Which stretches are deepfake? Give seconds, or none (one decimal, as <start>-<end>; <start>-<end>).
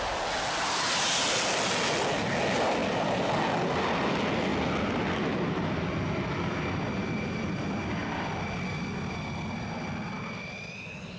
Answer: none